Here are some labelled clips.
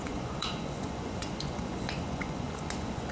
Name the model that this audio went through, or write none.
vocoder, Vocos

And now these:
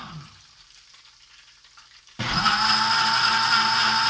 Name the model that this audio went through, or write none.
none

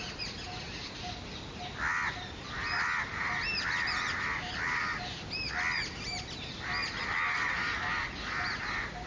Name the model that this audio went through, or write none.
none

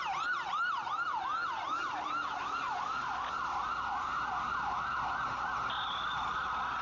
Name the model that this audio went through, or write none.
none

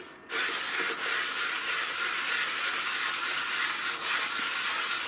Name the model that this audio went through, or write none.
none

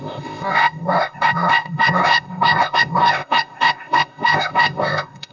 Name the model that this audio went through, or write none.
codec, ZipCodec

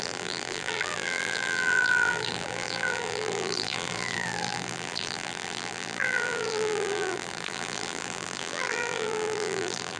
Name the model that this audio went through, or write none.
vocoder, BigVGAN v2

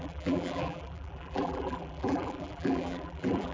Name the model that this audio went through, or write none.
vocoder, BigVGAN v2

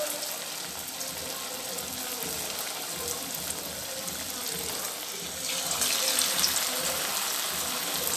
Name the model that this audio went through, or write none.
none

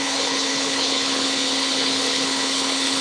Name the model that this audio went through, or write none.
codec, HILCodec